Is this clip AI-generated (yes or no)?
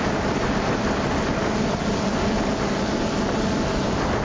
no